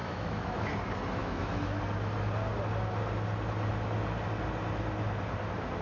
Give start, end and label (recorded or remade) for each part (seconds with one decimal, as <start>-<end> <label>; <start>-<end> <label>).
0.0-0.7 remade; 0.7-1.2 recorded; 1.2-1.8 remade; 1.8-5.8 recorded